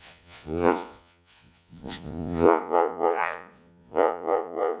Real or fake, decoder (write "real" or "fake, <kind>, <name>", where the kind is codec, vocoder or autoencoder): fake, vocoder, Vocos